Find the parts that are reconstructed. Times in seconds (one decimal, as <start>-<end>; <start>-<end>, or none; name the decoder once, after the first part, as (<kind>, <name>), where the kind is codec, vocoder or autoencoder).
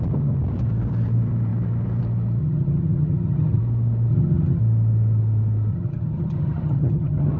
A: 2.4-3.6 (vocoder, HiFi-GAN); 4.1-4.6; 5.7-7.4